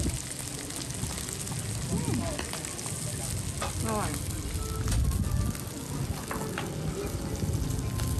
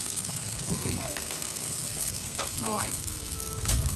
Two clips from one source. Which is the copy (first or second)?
second